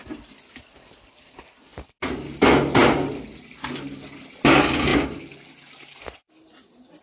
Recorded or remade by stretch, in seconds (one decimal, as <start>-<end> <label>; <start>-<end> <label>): 0.0-7.0 recorded